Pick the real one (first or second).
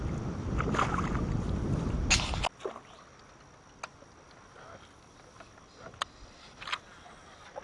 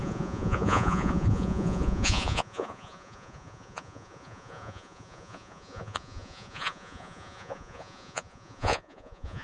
first